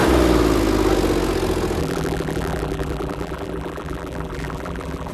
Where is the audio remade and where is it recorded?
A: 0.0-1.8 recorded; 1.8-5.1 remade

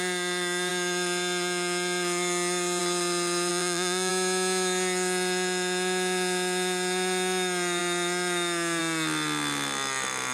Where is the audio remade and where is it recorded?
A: 0.0-3.5 recorded; 3.5-4.1 remade; 4.1-10.3 recorded

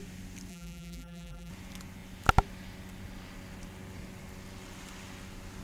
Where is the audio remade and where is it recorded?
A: 0.0-0.5 recorded; 0.5-1.5 remade; 1.5-5.6 recorded

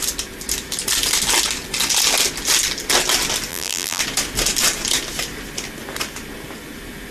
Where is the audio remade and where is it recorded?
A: 0.0-3.5 recorded; 3.5-4.0 remade; 4.0-7.1 recorded

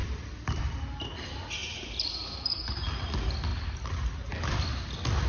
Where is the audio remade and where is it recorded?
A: 0.0-0.6 remade; 0.6-1.6 recorded; 1.6-3.1 remade; 3.1-5.3 recorded